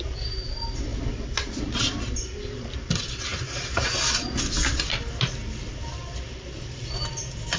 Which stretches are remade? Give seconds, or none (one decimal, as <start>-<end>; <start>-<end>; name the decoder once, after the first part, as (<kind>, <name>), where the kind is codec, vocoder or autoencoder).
none